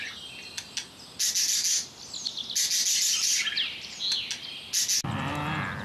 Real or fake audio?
real